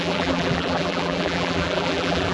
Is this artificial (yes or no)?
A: yes